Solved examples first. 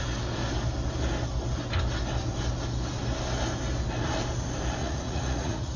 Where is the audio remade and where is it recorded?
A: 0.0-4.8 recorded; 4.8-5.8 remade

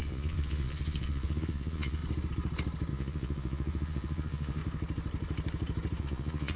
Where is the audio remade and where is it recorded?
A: 0.0-2.0 remade; 2.0-2.9 recorded; 2.9-4.6 remade; 4.6-6.0 recorded; 6.0-6.6 remade

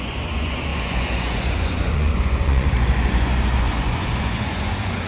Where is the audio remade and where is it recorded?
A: 0.0-5.1 remade